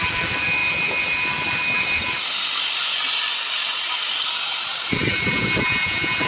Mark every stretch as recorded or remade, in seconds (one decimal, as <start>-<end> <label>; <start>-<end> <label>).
0.0-5.3 recorded; 5.3-6.3 remade